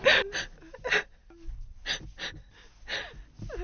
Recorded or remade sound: recorded